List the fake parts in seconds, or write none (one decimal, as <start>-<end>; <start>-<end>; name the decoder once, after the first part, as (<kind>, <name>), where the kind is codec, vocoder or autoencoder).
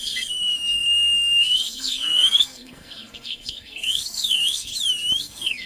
0.0-4.7 (codec, SNAC); 5.2-5.7